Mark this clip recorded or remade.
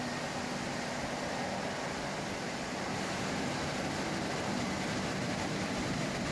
recorded